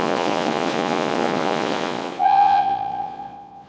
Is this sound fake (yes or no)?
yes